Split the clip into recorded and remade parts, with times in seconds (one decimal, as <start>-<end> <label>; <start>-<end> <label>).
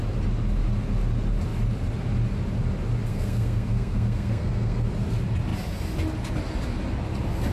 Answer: 0.0-3.1 recorded; 3.1-4.9 remade; 4.9-7.5 recorded